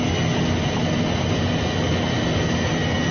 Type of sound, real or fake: real